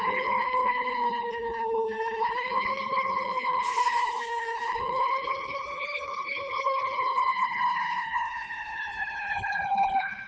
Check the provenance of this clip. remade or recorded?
remade